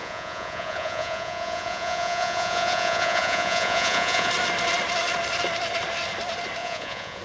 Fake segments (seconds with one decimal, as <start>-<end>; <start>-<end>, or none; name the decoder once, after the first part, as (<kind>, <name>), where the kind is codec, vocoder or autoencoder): 0.0-4.3 (vocoder, Vocos); 6.6-7.2

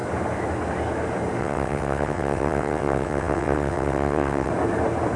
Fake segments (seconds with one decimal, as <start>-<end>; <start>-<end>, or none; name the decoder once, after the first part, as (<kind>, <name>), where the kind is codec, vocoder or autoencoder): 1.4-4.5 (vocoder, WaveNeXt)

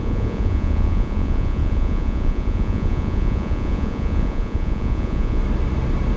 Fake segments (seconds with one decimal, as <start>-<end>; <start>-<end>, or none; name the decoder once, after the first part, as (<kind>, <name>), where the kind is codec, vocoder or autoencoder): 0.0-5.4 (vocoder, Vocos)

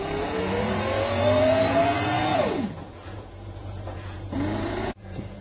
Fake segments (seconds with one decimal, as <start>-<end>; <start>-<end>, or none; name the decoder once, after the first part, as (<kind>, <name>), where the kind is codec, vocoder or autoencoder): 0.0-5.4 (vocoder, Vocos)

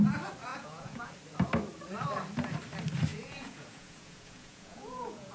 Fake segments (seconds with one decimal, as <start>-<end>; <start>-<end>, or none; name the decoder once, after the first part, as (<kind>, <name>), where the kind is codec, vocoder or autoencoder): 0.5-1.1 (vocoder, Vocos); 3.1-5.3

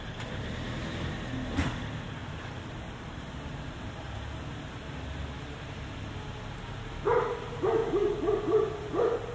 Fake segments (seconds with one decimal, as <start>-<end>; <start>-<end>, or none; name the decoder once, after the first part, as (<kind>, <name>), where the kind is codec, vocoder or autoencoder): 2.2-3.2 (vocoder, BigVGAN v2); 7.8-8.4